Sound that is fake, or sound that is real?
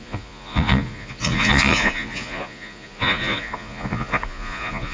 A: fake